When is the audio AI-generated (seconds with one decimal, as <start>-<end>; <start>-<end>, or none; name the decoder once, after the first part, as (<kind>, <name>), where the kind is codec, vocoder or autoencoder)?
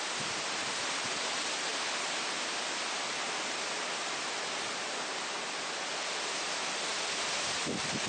none